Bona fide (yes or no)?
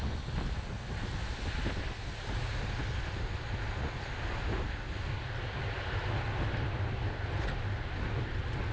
yes